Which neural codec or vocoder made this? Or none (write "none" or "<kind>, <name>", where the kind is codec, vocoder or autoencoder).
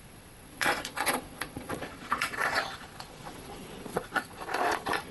vocoder, Vocos